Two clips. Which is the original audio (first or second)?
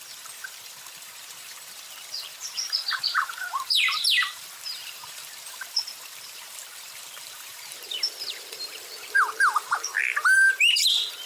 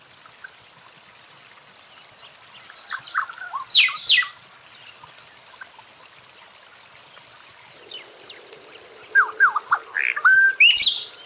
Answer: second